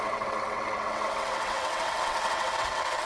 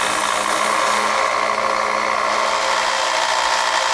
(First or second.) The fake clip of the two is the first